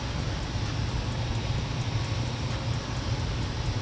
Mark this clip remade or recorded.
recorded